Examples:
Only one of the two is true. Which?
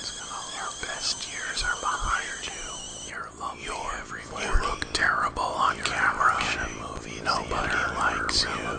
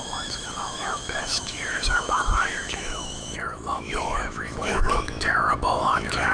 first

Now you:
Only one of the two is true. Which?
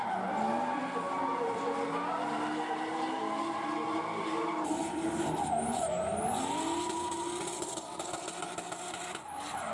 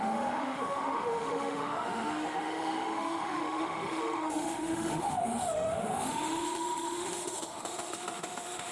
first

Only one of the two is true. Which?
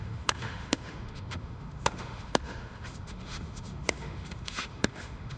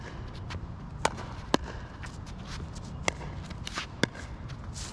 second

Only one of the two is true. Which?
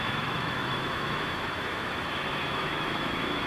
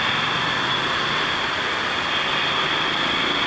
second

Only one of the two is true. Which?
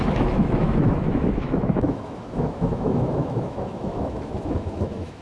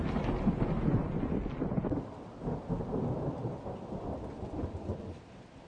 second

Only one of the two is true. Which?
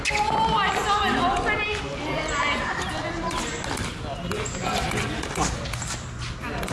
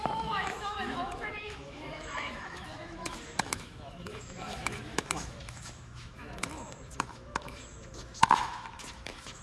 first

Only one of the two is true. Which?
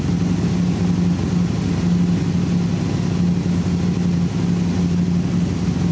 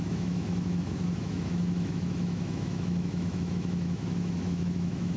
first